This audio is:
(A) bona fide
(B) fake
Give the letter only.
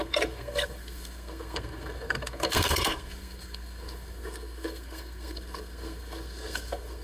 B